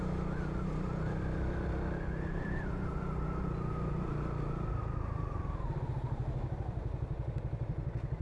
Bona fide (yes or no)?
yes